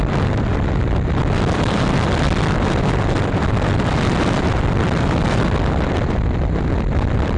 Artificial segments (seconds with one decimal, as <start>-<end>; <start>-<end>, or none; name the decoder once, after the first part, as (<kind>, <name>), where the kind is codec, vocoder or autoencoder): 0.0-7.4 (vocoder, BigVGAN v2)